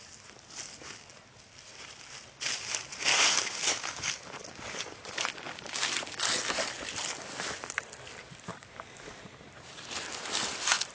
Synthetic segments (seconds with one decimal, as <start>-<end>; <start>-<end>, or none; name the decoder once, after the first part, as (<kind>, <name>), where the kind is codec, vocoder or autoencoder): 3.1-5.9 (codec, DAC); 8.5-9.2